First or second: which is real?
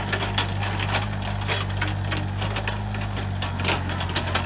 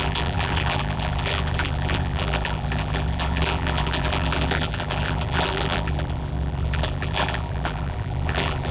first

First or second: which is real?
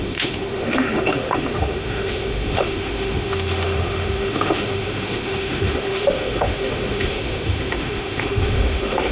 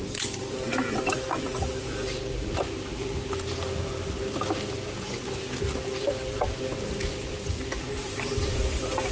second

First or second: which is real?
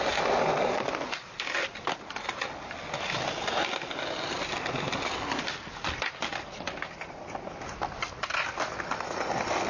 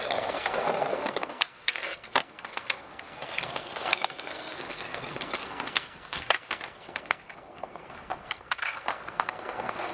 first